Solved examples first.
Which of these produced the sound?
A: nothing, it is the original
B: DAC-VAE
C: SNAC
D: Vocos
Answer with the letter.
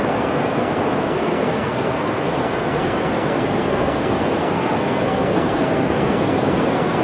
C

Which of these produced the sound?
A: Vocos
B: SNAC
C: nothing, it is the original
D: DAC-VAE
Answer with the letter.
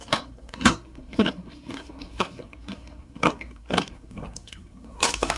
B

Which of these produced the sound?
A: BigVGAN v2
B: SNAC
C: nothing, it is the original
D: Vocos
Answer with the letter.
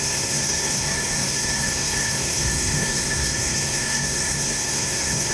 B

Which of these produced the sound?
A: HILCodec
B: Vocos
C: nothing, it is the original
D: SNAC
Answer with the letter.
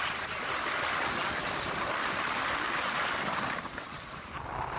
C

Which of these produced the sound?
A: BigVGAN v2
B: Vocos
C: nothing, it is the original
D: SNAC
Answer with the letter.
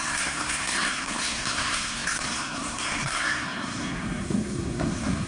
D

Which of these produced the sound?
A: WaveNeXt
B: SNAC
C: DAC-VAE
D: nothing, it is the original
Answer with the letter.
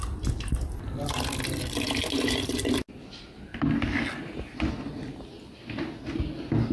D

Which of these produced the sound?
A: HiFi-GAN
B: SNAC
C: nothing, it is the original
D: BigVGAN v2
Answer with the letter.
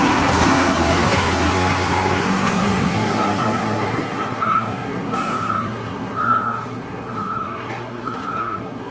B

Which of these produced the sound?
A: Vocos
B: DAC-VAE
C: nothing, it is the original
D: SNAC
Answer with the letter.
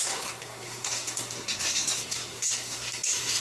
D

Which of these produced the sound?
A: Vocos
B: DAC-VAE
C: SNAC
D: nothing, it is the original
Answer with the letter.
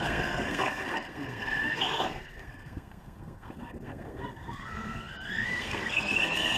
C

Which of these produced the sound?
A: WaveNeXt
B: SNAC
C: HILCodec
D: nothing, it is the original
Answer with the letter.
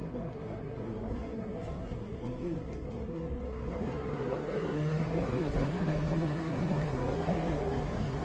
B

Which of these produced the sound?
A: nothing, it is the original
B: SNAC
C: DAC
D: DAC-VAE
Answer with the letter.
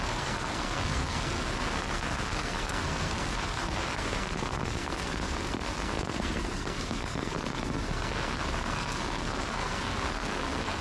B